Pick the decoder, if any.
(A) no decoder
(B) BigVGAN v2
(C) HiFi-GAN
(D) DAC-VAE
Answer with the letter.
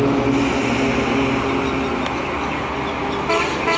A